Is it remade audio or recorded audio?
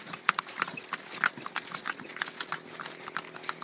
recorded